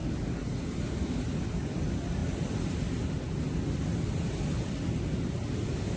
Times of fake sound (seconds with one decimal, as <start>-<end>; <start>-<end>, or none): 0.9-2.2